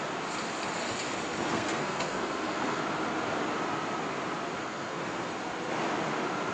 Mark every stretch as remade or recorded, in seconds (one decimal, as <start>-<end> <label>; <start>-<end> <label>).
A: 0.0-1.5 recorded; 1.5-2.8 remade; 2.8-4.6 recorded; 4.6-5.3 remade; 5.3-6.5 recorded